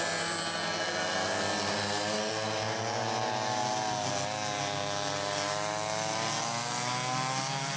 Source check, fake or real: real